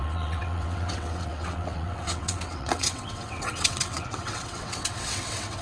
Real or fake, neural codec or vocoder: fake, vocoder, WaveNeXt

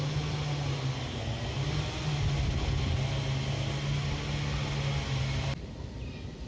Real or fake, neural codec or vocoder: real